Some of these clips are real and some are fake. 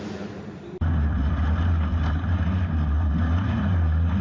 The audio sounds real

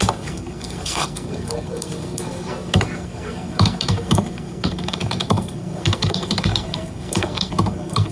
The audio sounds fake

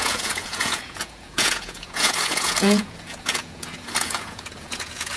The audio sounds fake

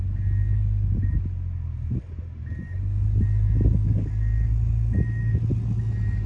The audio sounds real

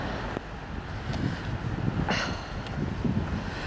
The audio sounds real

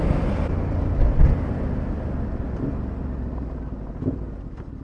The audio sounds real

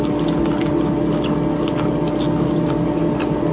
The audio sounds real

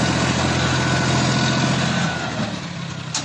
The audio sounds real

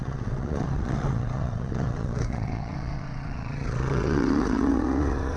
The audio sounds fake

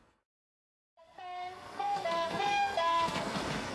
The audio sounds fake